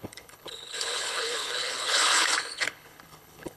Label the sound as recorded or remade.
remade